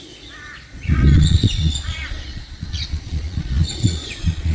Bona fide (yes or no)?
no